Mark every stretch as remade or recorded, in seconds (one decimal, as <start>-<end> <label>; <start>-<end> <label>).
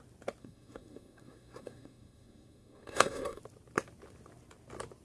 0.0-0.4 recorded; 0.4-3.4 remade; 3.4-5.0 recorded